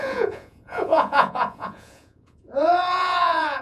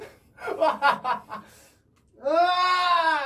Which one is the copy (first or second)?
first